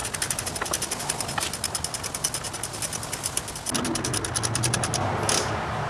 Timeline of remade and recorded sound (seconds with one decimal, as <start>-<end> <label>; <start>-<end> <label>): 0.0-5.9 recorded